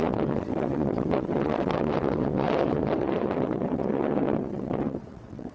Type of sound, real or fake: fake